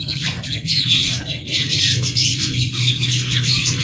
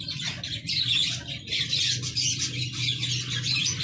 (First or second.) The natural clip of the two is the second